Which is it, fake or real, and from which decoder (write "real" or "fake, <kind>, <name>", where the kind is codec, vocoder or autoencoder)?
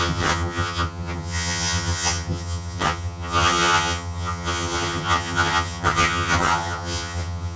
fake, vocoder, HiFi-GAN